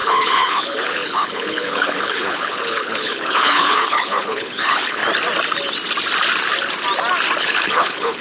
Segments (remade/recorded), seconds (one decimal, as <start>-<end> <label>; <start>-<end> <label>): 0.0-5.0 remade; 5.0-7.4 recorded; 7.4-8.2 remade